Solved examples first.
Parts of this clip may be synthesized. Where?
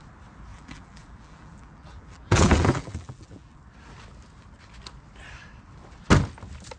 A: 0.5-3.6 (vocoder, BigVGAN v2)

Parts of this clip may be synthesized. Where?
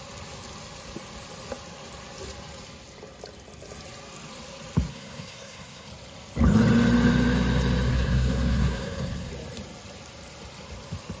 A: 4.9-5.9 (codec, SNAC); 7.9-9.3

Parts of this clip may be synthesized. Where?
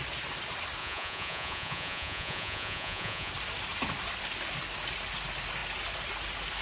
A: 0.8-3.3 (vocoder, Vocos)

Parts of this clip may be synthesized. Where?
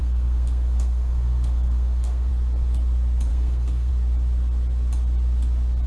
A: 0.0-2.3 (codec, SNAC); 3.3-3.9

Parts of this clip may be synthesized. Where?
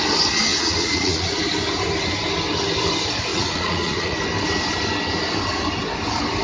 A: 0.5-1.4 (vocoder, Vocos); 3.3-4.2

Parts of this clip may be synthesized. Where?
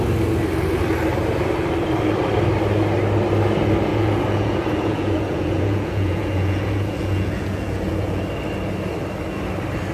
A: 3.9-8.2 (vocoder, Vocos)